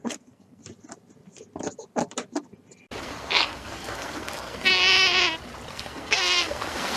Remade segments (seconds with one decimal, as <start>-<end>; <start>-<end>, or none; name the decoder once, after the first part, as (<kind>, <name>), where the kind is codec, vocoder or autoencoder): 0.0-0.6 (codec, SNAC); 3.0-4.7; 5.7-7.0